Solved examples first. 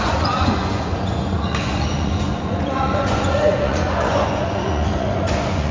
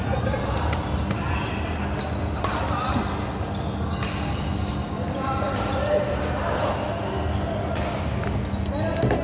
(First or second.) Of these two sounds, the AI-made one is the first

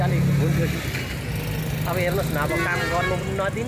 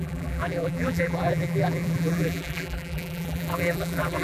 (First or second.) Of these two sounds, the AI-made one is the second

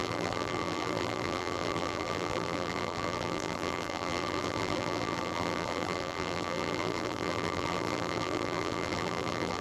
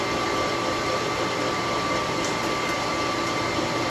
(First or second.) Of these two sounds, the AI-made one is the first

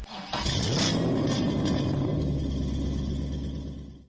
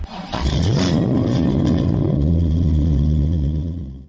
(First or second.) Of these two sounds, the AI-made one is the second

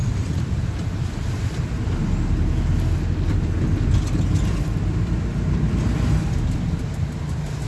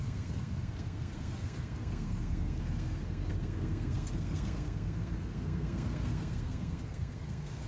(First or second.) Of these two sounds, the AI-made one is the second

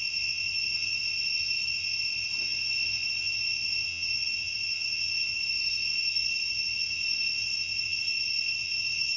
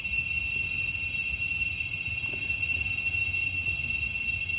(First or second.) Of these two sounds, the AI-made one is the first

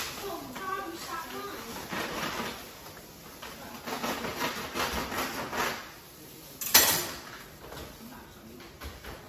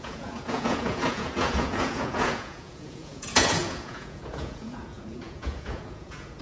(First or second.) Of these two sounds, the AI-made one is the second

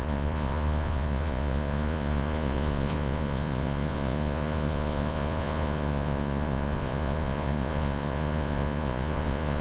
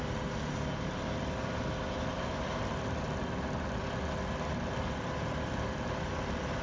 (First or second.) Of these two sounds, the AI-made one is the first